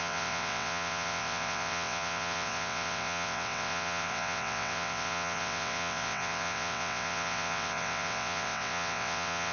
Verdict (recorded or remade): remade